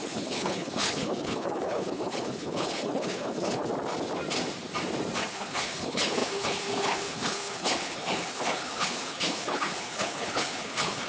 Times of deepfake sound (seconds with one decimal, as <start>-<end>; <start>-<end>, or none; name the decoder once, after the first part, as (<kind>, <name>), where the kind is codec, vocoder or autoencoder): 0.0-3.7 (codec, HILCodec); 5.3-11.1